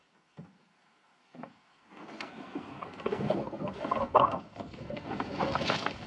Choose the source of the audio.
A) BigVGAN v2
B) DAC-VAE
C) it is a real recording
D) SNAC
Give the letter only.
D